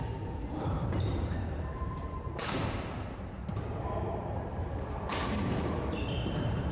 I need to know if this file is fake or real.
fake